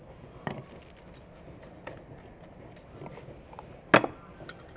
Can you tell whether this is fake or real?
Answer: real